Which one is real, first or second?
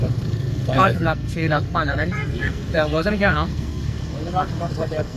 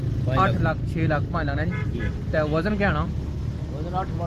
second